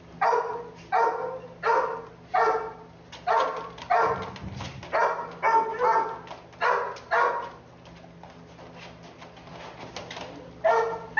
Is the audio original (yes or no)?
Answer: yes